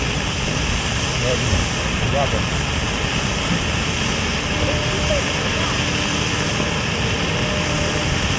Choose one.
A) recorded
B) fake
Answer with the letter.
A